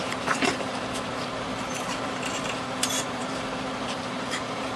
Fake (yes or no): yes